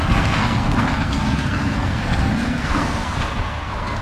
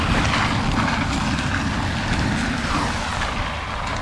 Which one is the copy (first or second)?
first